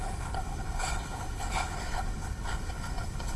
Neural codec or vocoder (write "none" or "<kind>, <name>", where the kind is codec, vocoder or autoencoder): codec, HILCodec